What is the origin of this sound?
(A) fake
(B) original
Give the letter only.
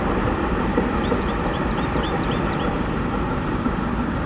B